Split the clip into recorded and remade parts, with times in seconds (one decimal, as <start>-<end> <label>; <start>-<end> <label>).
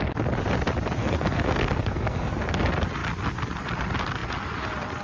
0.0-1.0 recorded; 1.0-2.5 remade; 2.5-5.0 recorded